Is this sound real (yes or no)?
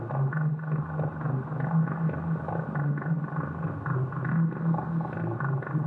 yes